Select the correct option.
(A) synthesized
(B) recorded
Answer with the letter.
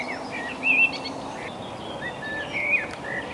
B